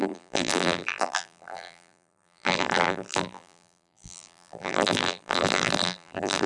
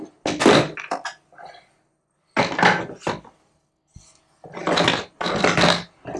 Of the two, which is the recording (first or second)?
second